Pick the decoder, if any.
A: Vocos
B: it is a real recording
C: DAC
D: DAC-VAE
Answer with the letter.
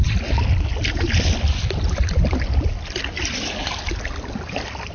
B